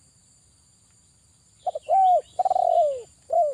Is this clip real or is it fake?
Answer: real